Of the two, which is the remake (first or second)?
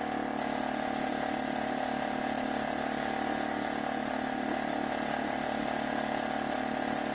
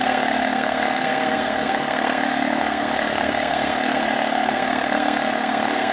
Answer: second